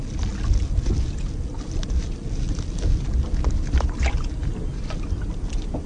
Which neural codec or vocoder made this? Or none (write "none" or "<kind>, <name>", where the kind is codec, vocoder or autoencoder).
none